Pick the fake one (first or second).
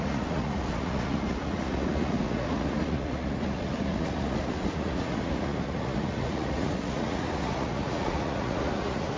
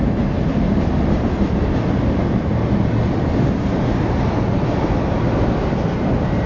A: first